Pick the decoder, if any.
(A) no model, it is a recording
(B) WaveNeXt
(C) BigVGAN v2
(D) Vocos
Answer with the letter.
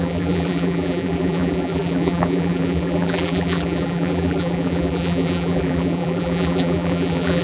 C